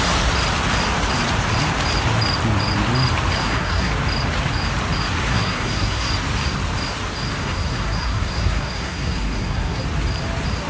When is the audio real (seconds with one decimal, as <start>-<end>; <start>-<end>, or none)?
0.0-3.4; 3.9-5.3; 6.1-7.4; 9.8-10.7

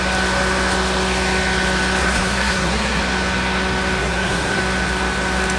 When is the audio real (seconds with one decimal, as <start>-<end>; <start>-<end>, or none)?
0.0-2.0; 3.0-4.0; 4.6-5.6

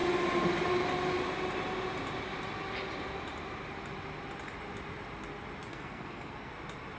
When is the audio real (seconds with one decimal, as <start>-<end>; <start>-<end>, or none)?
0.0-5.7; 6.5-7.0

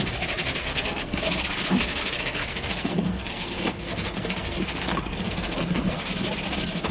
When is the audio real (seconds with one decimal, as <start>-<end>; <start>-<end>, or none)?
0.0-0.6; 1.2-2.0; 6.1-6.9

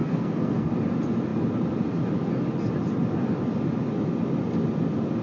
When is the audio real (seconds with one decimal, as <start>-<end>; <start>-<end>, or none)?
0.7-5.2